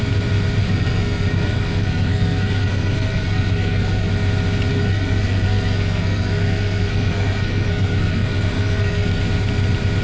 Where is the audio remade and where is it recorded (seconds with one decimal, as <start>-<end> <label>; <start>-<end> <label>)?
0.0-0.6 recorded; 0.6-4.1 remade; 4.1-4.7 recorded; 4.7-9.2 remade; 9.2-10.0 recorded